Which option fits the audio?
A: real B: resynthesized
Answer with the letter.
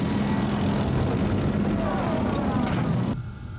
A